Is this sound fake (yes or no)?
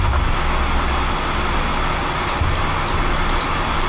no